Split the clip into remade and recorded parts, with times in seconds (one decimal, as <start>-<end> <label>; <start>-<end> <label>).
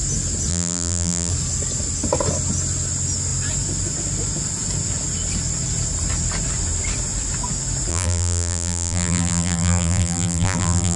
0.0-0.5 recorded; 0.5-1.3 remade; 1.3-7.9 recorded; 7.9-11.0 remade